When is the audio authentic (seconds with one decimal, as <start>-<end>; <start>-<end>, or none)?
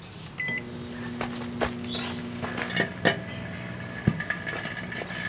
0.0-5.3